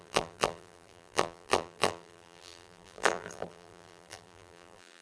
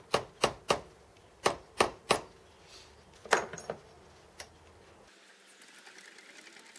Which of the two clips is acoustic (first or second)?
second